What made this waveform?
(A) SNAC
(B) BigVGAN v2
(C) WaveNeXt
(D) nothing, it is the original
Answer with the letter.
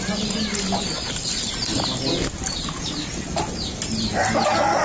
D